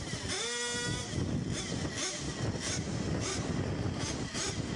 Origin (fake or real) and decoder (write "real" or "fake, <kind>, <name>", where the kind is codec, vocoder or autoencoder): real